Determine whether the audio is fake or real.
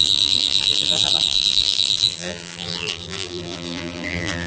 fake